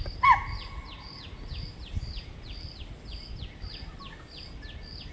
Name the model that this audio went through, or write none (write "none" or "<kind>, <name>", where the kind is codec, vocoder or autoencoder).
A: none